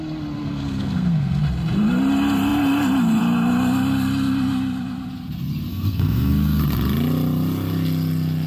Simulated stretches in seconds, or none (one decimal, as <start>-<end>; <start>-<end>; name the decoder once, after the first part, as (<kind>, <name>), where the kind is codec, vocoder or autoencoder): 0.4-1.4 (codec, SNAC); 5.7-6.6